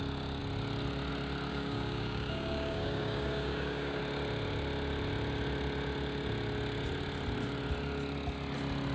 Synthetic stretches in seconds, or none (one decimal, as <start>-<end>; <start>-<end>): 1.5-4.0